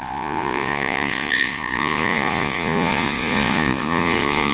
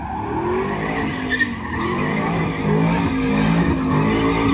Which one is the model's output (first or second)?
first